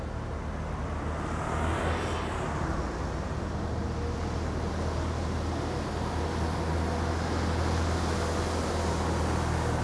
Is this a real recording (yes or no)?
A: yes